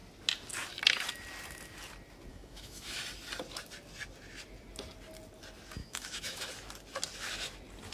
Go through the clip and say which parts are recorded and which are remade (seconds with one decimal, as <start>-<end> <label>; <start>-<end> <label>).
0.0-2.3 recorded; 2.3-3.0 remade; 3.0-5.8 recorded; 5.8-6.5 remade; 6.5-7.9 recorded